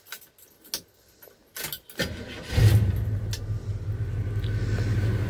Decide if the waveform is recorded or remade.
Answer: recorded